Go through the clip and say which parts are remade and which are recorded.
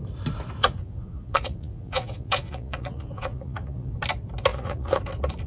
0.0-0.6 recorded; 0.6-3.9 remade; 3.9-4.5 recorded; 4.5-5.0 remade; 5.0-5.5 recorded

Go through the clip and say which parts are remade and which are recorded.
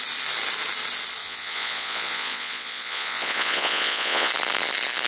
0.0-1.2 recorded; 1.2-4.3 remade; 4.3-5.1 recorded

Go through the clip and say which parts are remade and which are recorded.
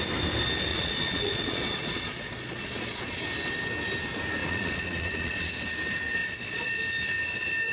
0.0-0.7 recorded; 0.7-3.2 remade; 3.2-4.4 recorded; 4.4-5.5 remade; 5.5-6.2 recorded; 6.2-6.7 remade; 6.7-7.7 recorded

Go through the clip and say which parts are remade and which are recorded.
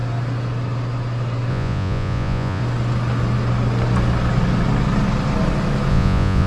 0.0-1.5 recorded; 1.5-2.6 remade; 2.6-5.9 recorded; 5.9-6.5 remade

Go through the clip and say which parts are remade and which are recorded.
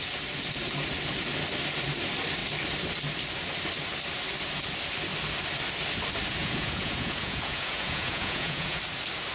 0.0-6.4 recorded; 6.4-8.8 remade; 8.8-9.3 recorded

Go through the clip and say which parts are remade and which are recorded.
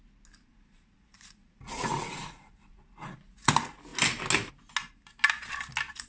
0.0-0.5 recorded; 0.5-2.5 remade; 2.5-3.0 recorded; 3.0-3.5 remade; 3.5-6.1 recorded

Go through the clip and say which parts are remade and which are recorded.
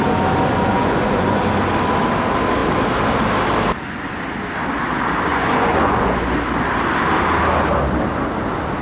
0.0-0.7 recorded; 0.7-1.4 remade; 1.4-5.3 recorded; 5.3-6.3 remade; 6.3-8.8 recorded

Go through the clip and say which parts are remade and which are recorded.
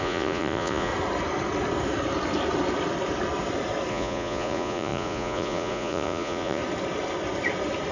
0.0-0.9 remade; 0.9-3.9 recorded; 3.9-6.6 remade; 6.6-7.9 recorded